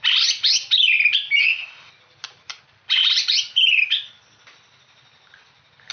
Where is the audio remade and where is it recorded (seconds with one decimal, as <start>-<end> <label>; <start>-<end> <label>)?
0.0-1.4 recorded; 1.4-1.9 remade; 1.9-5.9 recorded